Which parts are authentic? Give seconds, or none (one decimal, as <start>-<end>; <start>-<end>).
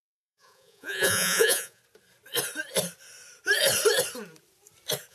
1.8-5.1